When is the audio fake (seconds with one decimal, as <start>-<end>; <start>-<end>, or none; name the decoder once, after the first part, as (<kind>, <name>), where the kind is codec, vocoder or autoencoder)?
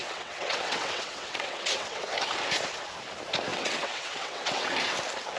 0.0-2.1 (vocoder, WaveNeXt); 3.5-4.7